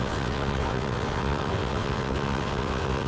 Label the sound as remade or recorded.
remade